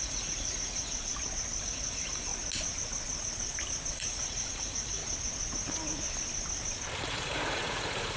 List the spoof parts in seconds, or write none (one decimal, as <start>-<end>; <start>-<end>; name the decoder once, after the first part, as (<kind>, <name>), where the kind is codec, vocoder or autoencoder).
0.0-1.1 (vocoder, Vocos); 1.6-2.3; 3.9-5.0; 7.0-8.2